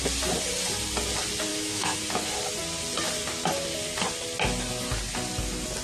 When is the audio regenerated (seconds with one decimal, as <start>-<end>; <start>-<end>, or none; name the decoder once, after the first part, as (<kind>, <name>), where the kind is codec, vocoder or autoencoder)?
1.5-2.0 (autoencoder, DAC-VAE)